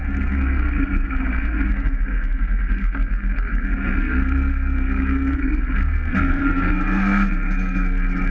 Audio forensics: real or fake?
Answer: fake